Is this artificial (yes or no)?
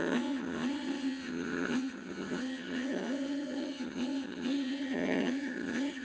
yes